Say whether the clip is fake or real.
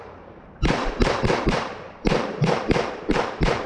fake